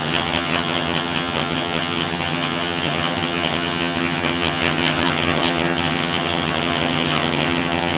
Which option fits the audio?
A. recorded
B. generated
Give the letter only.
B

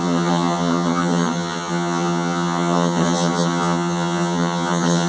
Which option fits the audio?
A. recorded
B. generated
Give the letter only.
B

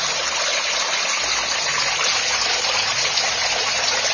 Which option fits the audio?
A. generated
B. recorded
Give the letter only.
B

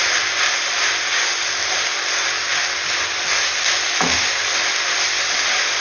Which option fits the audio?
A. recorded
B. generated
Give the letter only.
A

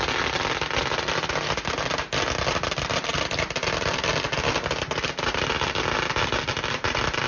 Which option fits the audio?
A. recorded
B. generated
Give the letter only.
A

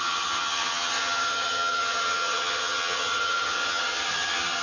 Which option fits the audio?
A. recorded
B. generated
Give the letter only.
B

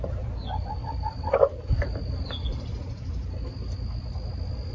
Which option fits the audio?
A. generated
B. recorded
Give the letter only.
B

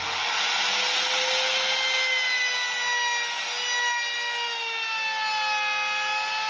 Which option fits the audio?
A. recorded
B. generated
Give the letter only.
A